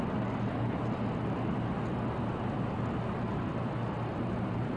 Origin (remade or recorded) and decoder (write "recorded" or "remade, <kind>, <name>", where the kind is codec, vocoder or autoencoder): recorded